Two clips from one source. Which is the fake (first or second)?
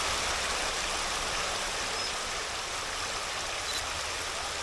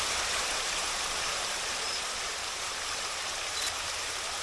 second